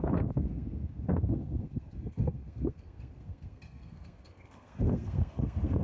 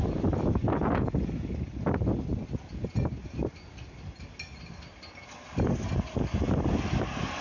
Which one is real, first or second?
second